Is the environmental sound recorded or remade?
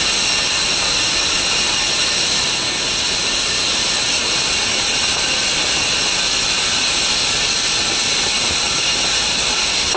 recorded